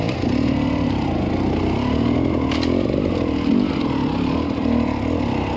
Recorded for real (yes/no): yes